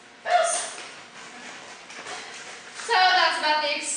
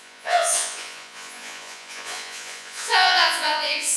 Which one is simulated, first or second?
second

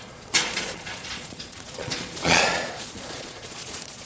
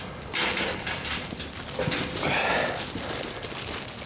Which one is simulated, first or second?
first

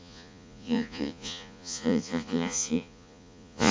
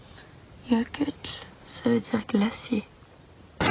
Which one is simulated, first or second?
first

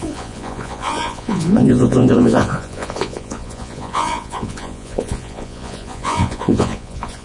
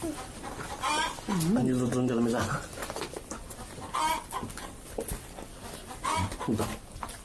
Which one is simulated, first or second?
first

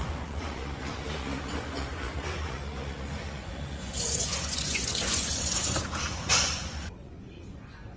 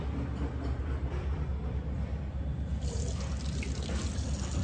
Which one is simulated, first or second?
first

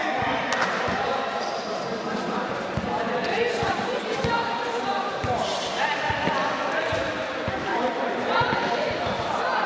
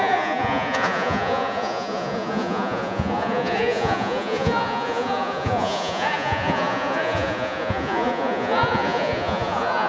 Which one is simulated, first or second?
second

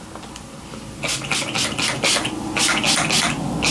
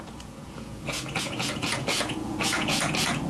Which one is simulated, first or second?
second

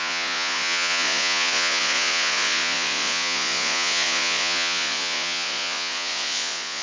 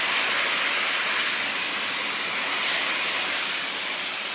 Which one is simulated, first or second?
first